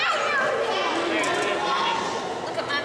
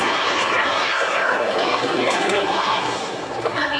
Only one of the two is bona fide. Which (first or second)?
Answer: first